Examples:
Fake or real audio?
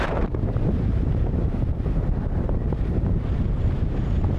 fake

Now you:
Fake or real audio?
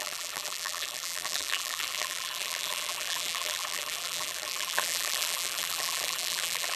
fake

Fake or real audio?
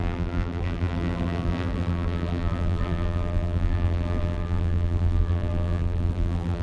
fake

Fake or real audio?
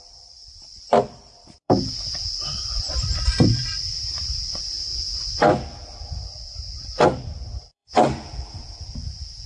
fake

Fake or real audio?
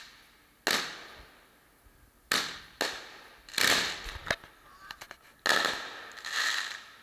real